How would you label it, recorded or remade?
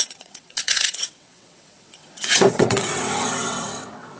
remade